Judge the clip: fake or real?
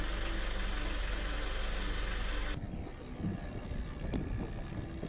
real